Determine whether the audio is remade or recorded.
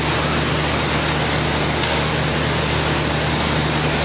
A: recorded